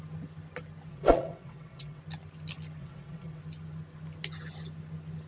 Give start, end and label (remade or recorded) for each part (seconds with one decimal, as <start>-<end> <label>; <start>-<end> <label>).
0.0-0.9 recorded; 0.9-2.0 remade; 2.0-2.8 recorded; 2.8-3.4 remade; 3.4-5.3 recorded